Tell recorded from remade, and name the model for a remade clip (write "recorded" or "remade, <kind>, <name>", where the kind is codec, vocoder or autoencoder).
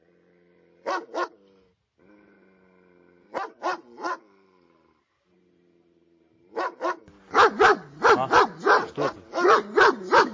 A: recorded